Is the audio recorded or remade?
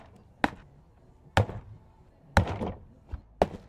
recorded